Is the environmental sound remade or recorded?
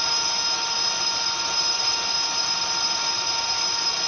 recorded